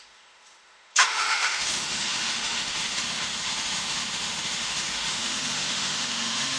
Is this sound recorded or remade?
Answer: remade